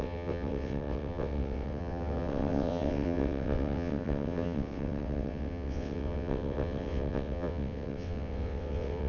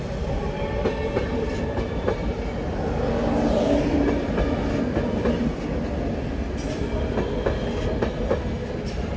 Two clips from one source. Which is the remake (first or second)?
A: first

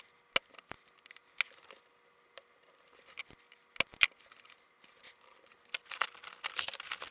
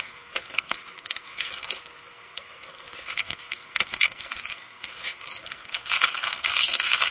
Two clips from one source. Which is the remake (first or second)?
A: second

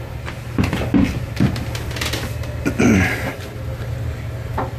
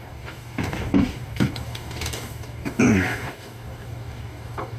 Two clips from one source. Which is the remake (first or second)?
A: second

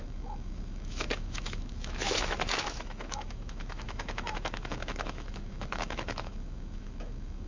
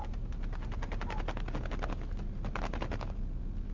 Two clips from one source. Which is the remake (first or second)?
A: first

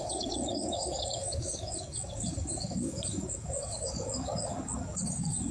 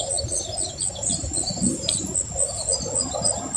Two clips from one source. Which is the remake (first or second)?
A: first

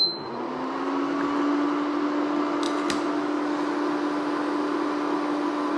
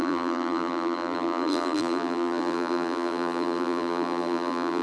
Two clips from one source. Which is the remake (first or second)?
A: second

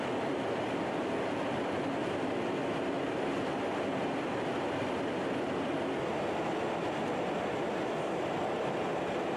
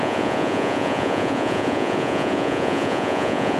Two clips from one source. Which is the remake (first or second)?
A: second